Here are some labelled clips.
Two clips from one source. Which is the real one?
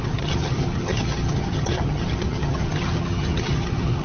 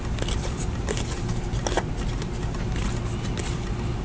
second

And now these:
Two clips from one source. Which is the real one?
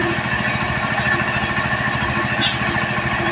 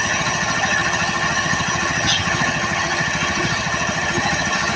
first